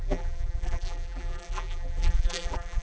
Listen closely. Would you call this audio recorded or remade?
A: remade